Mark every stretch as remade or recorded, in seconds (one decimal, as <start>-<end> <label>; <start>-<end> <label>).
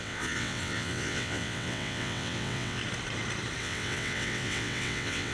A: 0.0-2.8 remade; 2.8-3.6 recorded; 3.6-5.3 remade